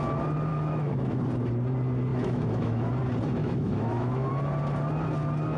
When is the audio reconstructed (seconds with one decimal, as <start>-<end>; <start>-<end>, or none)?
0.5-1.2; 2.1-2.9; 3.4-4.3